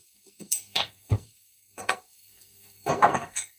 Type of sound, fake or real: fake